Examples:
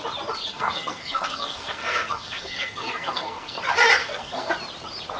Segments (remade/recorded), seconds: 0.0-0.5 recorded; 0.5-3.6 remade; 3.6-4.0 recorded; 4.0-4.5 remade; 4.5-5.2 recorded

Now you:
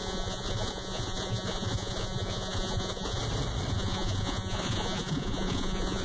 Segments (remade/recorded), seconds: 0.0-3.2 remade; 3.2-3.7 recorded; 3.7-6.0 remade

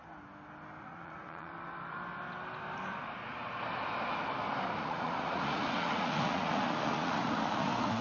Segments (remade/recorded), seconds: 0.0-0.8 recorded; 0.8-1.5 remade; 1.5-4.7 recorded; 4.7-8.0 remade

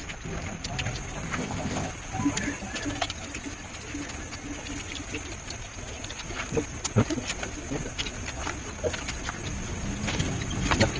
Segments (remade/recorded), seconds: 0.0-1.3 recorded; 1.3-1.9 remade; 1.9-11.0 recorded

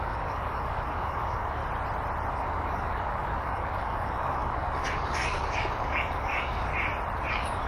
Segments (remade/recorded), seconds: 0.0-1.6 remade; 1.6-2.3 recorded; 2.3-6.7 remade; 6.7-7.3 recorded; 7.3-7.7 remade

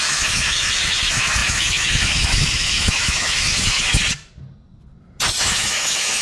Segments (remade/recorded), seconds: 0.0-4.0 remade; 4.0-5.4 recorded; 5.4-6.2 remade

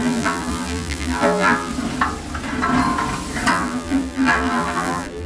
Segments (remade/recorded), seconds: 0.0-1.7 remade; 1.7-3.5 recorded; 3.5-5.3 remade

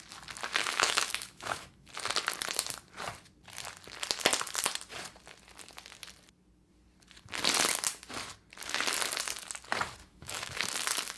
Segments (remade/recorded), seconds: 0.0-0.6 recorded; 0.6-1.9 remade; 1.9-10.0 recorded; 10.0-10.6 remade; 10.6-11.2 recorded